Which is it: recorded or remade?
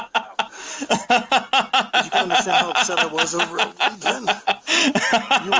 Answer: recorded